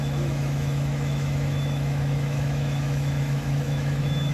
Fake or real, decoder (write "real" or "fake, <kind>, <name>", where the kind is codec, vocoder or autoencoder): fake, autoencoder, DAC-VAE